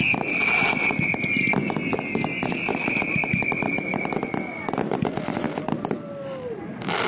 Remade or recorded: recorded